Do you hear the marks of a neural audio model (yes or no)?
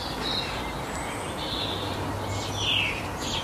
no